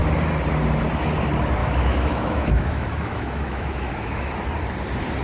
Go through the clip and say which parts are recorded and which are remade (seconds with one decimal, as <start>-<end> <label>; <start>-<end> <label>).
0.0-1.6 recorded; 1.6-4.3 remade; 4.3-5.2 recorded